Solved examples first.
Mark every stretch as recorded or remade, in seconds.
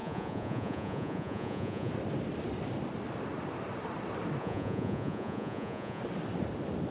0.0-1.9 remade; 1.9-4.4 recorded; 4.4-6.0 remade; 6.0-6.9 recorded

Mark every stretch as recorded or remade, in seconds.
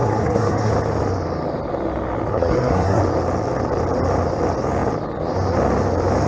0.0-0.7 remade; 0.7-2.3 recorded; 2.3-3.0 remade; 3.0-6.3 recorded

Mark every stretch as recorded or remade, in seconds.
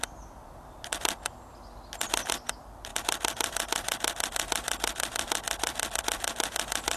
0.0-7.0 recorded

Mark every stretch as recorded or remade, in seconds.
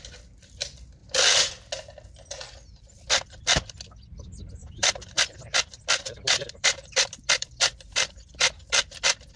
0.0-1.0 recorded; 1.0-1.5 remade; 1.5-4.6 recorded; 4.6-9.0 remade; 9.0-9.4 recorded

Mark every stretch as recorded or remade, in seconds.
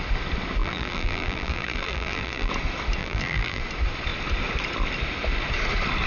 0.0-0.6 recorded; 0.6-2.5 remade; 2.5-3.0 recorded; 3.0-3.6 remade; 3.6-6.1 recorded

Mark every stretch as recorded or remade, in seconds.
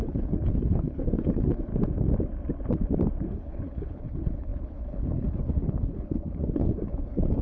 0.0-1.7 remade; 1.7-3.3 recorded; 3.3-7.4 remade